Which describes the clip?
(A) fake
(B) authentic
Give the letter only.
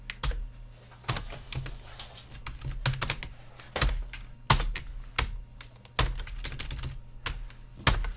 B